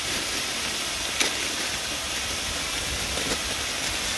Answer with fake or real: real